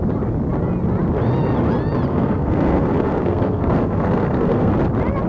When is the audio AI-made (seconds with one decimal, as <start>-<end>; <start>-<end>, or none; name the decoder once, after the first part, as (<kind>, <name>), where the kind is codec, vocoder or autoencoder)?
2.1-4.7 (codec, SNAC)